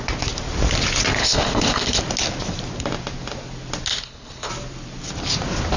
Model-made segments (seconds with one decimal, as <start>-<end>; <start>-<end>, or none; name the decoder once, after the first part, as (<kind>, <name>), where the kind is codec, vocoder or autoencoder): 1.2-2.0 (codec, HILCodec); 3.9-4.5